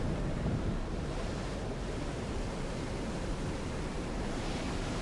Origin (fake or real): fake